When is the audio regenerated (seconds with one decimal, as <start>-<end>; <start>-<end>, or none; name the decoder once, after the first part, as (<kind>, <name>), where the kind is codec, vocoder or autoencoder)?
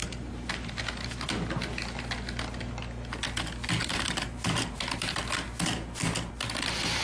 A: 0.0-0.8 (vocoder, BigVGAN v2); 3.8-5.2